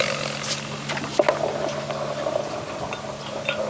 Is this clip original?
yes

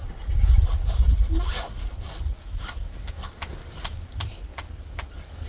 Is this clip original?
yes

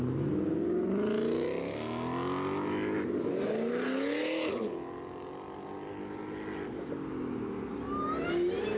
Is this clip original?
yes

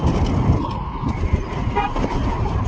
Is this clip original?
yes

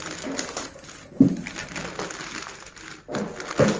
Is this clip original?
yes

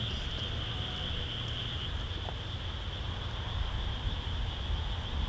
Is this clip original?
yes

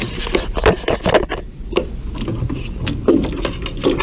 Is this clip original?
yes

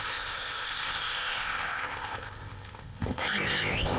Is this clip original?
no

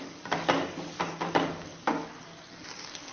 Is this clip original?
yes